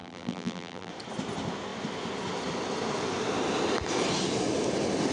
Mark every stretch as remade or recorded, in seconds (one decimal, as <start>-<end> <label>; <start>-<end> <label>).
0.0-0.9 remade; 0.9-5.1 recorded